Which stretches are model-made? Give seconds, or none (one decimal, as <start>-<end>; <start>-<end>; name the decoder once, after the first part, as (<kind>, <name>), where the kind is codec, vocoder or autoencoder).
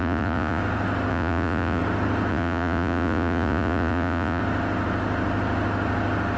0.0-0.6 (vocoder, Vocos); 1.1-1.8; 2.3-4.4